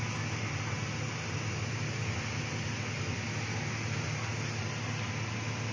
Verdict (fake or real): real